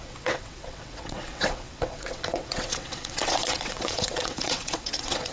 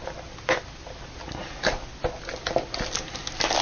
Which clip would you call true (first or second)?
second